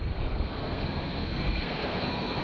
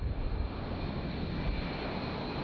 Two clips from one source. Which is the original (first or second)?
second